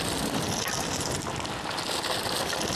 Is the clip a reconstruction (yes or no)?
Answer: no